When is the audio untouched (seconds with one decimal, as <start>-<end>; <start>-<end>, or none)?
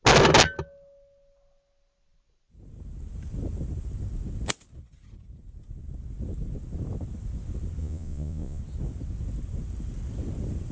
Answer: 0.0-7.8; 8.6-10.7